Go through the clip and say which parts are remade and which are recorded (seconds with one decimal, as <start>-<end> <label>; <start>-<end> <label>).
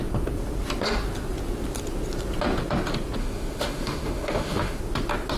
0.0-3.2 recorded; 3.2-4.8 remade; 4.8-5.4 recorded